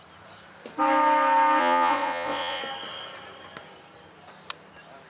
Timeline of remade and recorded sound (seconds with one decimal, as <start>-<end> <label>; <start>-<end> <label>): 0.0-1.6 recorded; 1.6-2.6 remade; 2.6-5.1 recorded